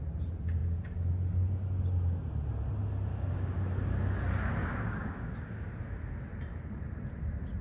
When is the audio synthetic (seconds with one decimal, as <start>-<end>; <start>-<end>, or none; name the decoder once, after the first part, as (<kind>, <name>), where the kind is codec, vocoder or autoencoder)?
3.1-3.8 (codec, DAC); 4.6-5.7